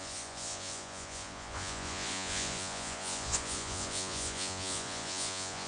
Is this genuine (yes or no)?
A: no